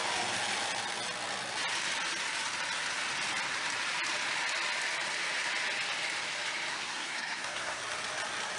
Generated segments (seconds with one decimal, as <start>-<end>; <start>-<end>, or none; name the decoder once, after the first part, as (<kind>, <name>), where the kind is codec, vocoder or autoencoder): 6.7-7.8 (codec, SNAC)